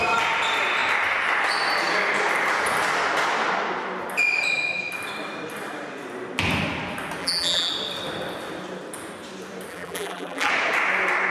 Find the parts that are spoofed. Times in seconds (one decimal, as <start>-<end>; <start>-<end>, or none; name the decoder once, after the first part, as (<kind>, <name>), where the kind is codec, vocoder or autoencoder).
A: 7.2-7.7 (vocoder, BigVGAN v2); 9.7-10.5